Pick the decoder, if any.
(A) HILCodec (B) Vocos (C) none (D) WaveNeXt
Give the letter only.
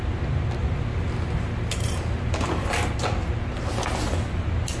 C